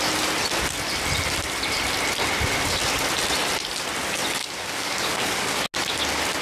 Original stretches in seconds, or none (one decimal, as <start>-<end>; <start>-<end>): 0.0-4.4; 5.6-6.4